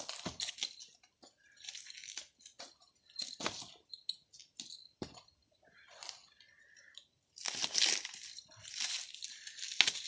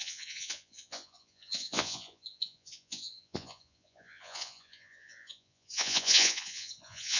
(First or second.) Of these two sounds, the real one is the first